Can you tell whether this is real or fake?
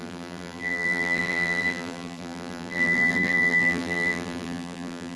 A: fake